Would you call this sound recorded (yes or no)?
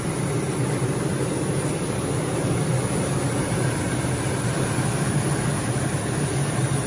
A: no